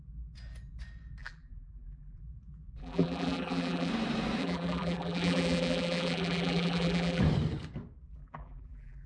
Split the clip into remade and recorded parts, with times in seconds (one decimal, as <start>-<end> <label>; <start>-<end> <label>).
0.0-1.2 recorded; 1.2-2.2 remade; 2.2-2.8 recorded; 2.8-3.9 remade; 3.9-4.4 recorded; 4.4-7.2 remade; 7.2-8.2 recorded; 8.2-9.1 remade